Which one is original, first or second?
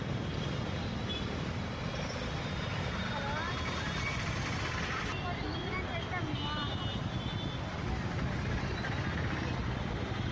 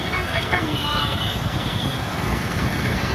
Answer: first